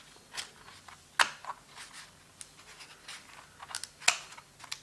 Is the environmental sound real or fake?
real